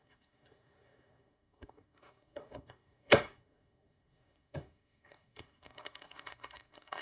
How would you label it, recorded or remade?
remade